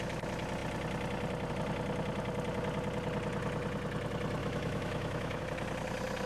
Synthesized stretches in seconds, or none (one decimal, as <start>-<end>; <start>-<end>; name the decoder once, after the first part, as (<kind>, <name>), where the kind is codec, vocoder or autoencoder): 4.4-5.4 (autoencoder, DAC-VAE)